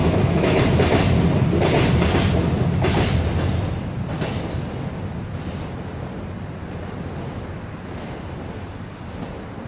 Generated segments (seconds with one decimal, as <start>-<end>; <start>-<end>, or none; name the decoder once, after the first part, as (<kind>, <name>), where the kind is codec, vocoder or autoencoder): 0.0-0.6 (autoencoder, DAC-VAE)